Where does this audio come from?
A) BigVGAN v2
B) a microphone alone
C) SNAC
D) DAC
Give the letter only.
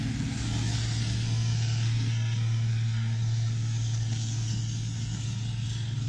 C